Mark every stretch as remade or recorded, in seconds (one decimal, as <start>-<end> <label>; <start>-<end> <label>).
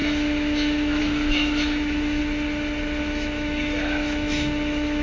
0.0-2.2 remade; 2.2-3.0 recorded; 3.0-5.0 remade